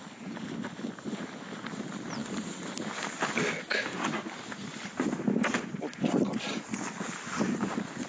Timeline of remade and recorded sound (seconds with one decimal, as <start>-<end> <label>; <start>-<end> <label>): 0.0-8.1 recorded